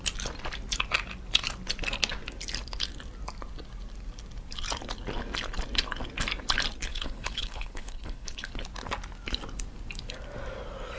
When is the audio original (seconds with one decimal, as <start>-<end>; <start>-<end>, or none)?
0.0-6.9; 8.5-11.0